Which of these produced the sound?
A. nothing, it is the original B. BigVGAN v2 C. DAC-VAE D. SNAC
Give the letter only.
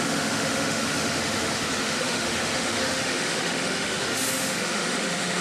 C